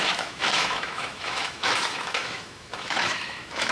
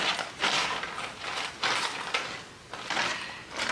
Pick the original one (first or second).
second